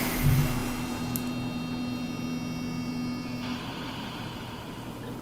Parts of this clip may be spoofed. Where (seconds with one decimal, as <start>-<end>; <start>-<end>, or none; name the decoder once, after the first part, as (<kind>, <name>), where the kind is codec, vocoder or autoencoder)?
none